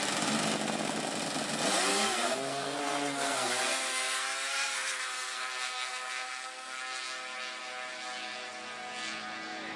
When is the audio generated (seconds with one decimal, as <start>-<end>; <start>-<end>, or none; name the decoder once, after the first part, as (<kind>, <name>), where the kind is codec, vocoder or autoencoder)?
1.9-6.8 (codec, SNAC)